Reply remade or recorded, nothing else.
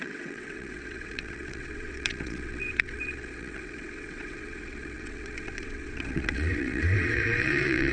remade